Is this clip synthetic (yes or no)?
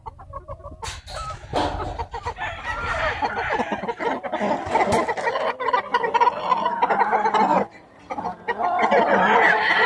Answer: no